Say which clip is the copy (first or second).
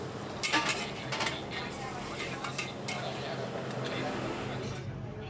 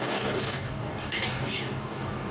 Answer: second